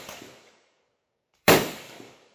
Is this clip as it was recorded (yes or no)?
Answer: no